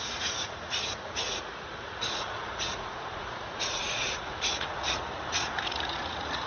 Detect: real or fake fake